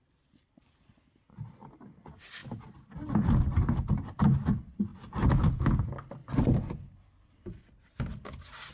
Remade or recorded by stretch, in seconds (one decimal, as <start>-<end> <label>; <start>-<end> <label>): 0.0-6.2 recorded; 6.2-7.4 remade; 7.4-8.7 recorded